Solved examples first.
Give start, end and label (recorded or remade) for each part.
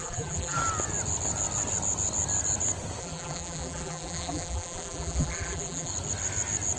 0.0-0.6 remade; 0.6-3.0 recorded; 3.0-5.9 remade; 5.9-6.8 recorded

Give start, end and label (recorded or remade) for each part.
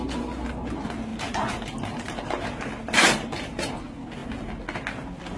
0.0-1.1 recorded; 1.1-3.7 remade; 3.7-5.4 recorded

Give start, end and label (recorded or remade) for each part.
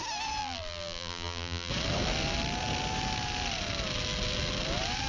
0.0-0.4 recorded; 0.4-1.7 remade; 1.7-5.1 recorded